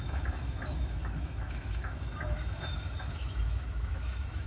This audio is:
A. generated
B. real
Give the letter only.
A